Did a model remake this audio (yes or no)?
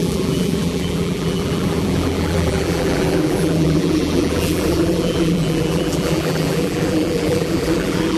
yes